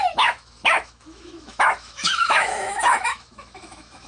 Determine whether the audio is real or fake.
fake